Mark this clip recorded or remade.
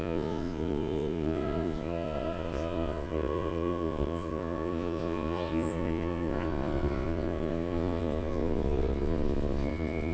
remade